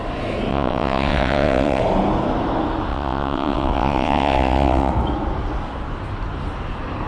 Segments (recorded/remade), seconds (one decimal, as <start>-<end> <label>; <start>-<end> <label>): 0.0-0.5 recorded; 0.5-1.8 remade; 1.8-2.9 recorded; 2.9-4.9 remade; 4.9-7.1 recorded